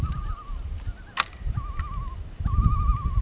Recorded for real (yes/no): yes